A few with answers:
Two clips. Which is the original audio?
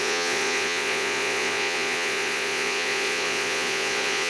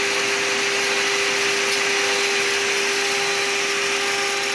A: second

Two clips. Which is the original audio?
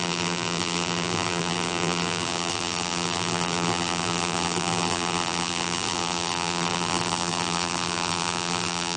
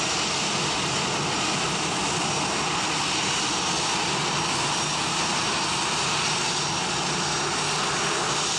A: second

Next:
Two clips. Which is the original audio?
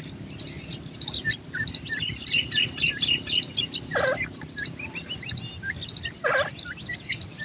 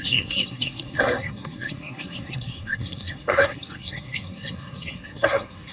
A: first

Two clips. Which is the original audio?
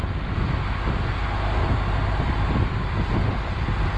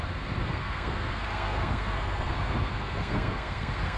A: first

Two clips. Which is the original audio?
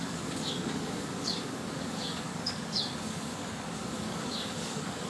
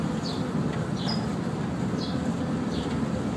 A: second